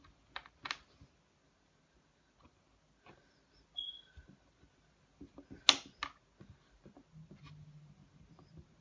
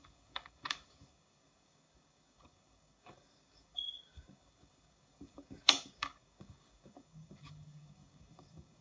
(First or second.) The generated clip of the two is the second